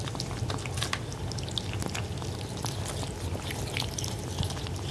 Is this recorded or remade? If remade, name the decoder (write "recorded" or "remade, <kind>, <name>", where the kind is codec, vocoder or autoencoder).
recorded